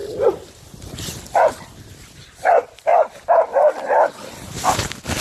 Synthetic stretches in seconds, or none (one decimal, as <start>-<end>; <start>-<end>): 0.0-0.6